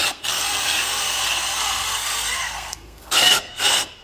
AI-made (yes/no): yes